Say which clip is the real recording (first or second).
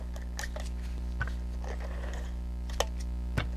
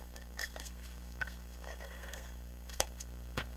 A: first